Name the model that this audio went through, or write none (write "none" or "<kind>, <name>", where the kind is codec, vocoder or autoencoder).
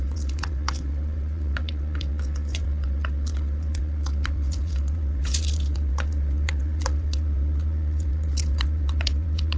vocoder, WaveNeXt